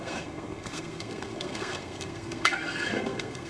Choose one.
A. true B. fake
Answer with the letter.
B